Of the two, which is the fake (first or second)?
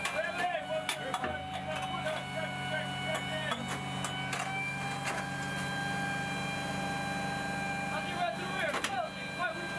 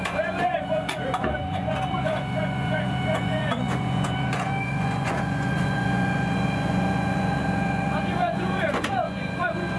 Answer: second